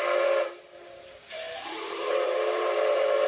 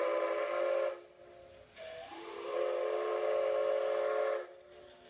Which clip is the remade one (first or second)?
first